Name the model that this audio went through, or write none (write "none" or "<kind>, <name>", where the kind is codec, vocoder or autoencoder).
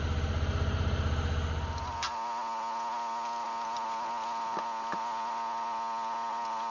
none